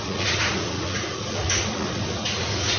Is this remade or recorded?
remade